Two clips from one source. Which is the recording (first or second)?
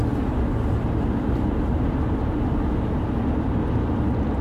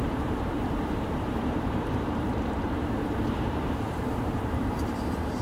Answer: first